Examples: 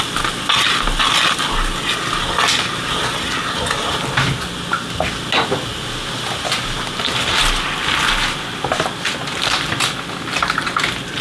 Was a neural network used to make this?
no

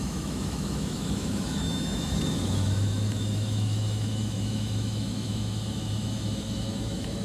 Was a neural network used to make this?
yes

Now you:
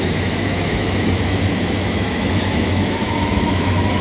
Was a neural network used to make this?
yes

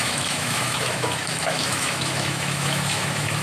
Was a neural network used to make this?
yes